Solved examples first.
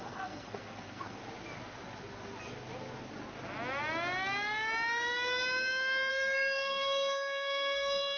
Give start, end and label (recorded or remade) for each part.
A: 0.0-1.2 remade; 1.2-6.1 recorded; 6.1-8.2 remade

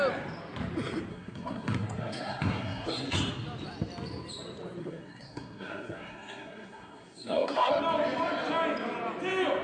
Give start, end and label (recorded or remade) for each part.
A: 0.0-1.1 recorded; 1.1-3.3 remade; 3.3-4.8 recorded; 4.8-7.7 remade; 7.7-9.6 recorded

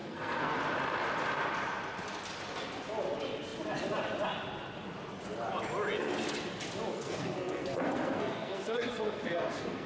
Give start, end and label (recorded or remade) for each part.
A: 0.0-0.6 remade; 0.6-6.9 recorded; 6.9-9.9 remade

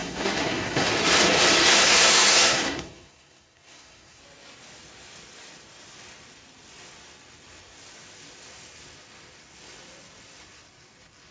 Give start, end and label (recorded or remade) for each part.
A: 0.0-0.9 remade; 0.9-1.6 recorded; 1.6-4.2 remade; 4.2-11.3 recorded

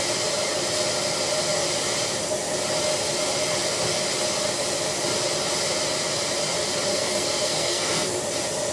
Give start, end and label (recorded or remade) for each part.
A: 0.0-6.9 recorded; 6.9-8.2 remade; 8.2-8.7 recorded